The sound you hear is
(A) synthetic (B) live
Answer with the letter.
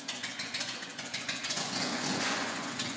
A